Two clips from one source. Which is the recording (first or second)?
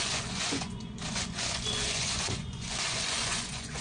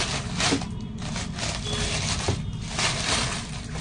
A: second